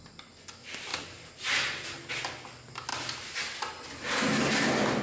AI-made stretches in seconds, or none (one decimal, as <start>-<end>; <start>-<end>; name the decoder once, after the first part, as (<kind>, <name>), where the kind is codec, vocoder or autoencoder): none